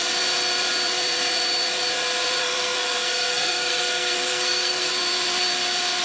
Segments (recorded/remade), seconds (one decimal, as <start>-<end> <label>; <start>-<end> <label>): 0.0-2.4 recorded; 2.4-4.9 remade; 4.9-6.0 recorded